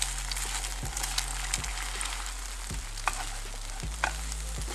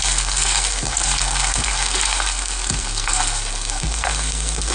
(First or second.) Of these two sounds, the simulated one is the second